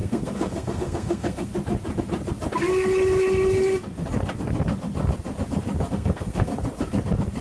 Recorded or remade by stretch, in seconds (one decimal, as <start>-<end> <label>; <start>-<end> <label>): 0.0-1.5 remade; 1.5-5.9 recorded; 5.9-6.5 remade; 6.5-7.4 recorded